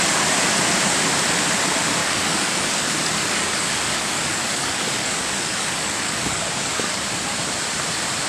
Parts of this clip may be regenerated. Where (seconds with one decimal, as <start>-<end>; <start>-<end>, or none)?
2.0-7.0